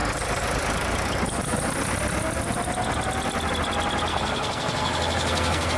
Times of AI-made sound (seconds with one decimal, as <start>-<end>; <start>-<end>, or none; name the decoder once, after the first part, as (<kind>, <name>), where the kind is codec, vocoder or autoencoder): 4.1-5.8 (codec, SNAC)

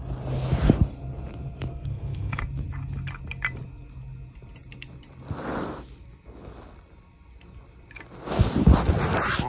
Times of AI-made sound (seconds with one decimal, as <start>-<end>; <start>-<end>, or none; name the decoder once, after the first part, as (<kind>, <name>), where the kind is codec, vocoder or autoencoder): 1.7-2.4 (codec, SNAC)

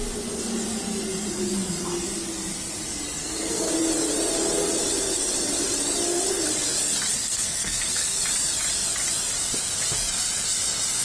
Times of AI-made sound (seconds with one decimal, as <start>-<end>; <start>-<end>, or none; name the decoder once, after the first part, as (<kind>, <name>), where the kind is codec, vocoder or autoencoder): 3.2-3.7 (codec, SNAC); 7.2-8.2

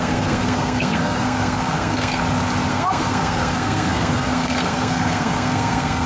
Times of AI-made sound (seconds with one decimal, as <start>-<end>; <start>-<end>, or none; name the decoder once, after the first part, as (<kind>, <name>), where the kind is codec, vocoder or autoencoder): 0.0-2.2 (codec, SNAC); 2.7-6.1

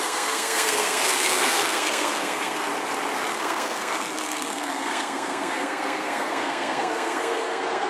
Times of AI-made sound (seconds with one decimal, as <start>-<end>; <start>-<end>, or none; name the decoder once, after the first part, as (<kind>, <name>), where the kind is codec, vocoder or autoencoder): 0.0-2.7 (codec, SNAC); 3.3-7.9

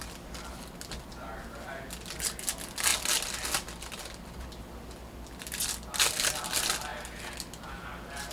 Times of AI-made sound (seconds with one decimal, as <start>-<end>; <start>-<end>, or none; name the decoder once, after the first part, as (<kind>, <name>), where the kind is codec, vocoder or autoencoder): none

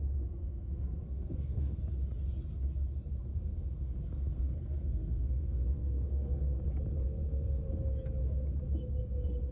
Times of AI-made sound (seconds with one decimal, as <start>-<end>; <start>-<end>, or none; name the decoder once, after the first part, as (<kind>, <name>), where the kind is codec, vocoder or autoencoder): 0.4-1.8 (codec, SNAC); 3.3-6.6

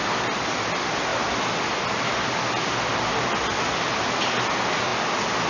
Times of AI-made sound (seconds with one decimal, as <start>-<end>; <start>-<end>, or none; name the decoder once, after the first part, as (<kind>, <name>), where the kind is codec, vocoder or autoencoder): none